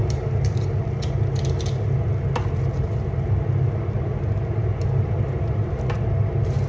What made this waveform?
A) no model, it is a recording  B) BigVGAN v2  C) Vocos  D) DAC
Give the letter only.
A